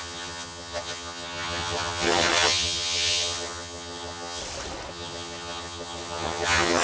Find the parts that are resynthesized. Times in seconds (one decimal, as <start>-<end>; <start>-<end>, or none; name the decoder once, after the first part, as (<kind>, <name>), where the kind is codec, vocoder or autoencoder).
0.0-4.4 (vocoder, HiFi-GAN); 4.9-6.8